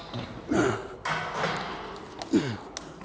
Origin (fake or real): real